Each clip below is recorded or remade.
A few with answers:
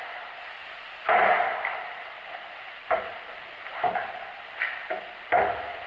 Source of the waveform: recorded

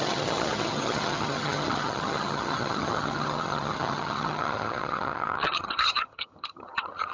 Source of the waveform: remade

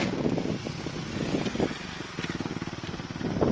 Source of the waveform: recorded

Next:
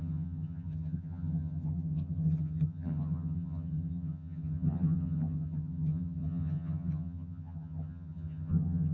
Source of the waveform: remade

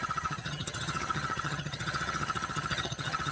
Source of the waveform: remade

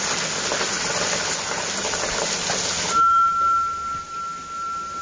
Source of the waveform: recorded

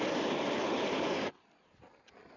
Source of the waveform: recorded